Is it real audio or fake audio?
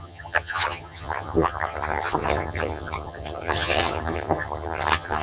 fake